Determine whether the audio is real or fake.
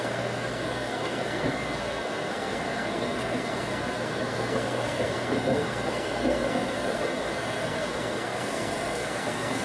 fake